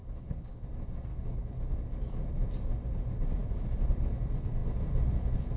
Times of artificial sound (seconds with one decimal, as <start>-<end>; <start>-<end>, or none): 0.0-0.6; 1.1-1.6